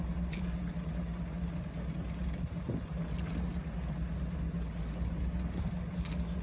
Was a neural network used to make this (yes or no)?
no